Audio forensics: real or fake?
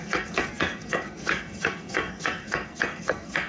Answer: fake